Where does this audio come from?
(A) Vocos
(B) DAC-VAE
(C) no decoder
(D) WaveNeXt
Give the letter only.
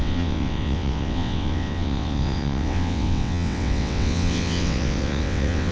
D